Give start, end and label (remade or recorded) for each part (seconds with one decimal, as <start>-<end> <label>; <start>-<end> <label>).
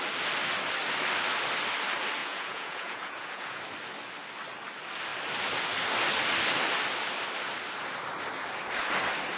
0.0-2.2 recorded; 2.2-3.6 remade; 3.6-9.4 recorded